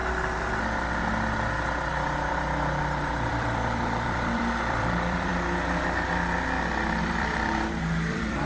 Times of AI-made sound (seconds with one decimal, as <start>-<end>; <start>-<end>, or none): 3.3-5.3; 7.0-8.5